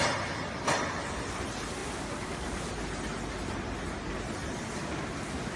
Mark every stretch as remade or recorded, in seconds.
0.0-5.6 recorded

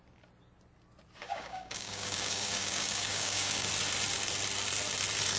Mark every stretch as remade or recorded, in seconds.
0.0-1.2 recorded; 1.2-3.7 remade; 3.7-5.4 recorded

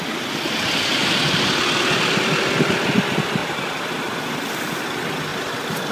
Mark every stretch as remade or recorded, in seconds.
0.0-5.9 recorded

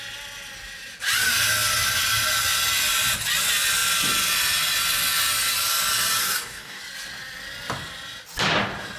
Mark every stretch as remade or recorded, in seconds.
0.0-6.2 recorded; 6.2-6.8 remade; 6.8-9.0 recorded

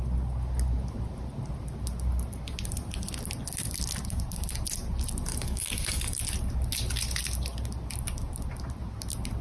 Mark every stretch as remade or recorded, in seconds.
0.0-5.3 recorded; 5.3-6.2 remade; 6.2-9.4 recorded

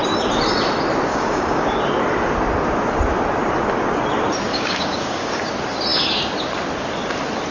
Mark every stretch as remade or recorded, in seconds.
0.0-1.1 recorded; 1.1-1.8 remade; 1.8-4.5 recorded; 4.5-5.5 remade; 5.5-7.5 recorded

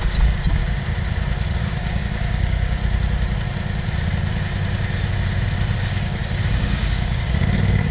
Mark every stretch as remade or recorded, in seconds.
0.0-0.6 remade; 0.6-1.6 recorded; 1.6-2.8 remade; 2.8-5.8 recorded; 5.8-7.9 remade

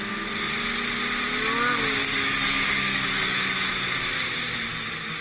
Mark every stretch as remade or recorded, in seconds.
0.0-2.0 recorded; 2.0-3.7 remade; 3.7-5.2 recorded